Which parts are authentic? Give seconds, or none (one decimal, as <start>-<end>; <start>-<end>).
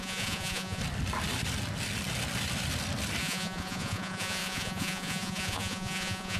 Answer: 0.8-3.2